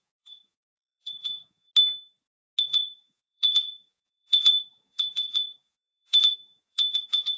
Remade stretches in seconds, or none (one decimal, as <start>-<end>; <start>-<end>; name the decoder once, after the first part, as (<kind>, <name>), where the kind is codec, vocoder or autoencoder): 0.0-1.7 (vocoder, Vocos); 2.6-7.4